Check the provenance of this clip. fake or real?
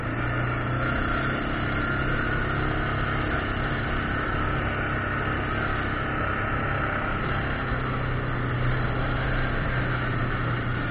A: real